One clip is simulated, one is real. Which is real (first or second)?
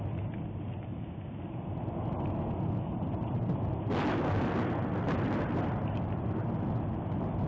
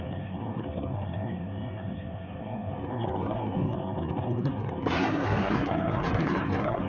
first